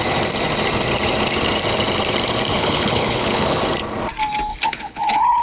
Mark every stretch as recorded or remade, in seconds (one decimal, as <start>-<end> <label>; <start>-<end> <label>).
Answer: 0.0-2.5 recorded; 2.5-3.6 remade; 3.6-4.5 recorded; 4.5-5.4 remade